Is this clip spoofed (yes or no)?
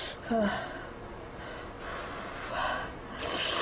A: no